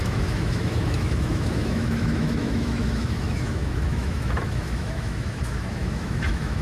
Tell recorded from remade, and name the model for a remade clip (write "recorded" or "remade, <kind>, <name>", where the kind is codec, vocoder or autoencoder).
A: remade, autoencoder, DAC-VAE